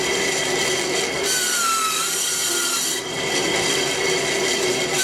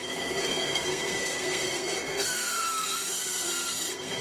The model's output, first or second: second